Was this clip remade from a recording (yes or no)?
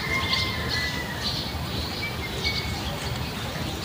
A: no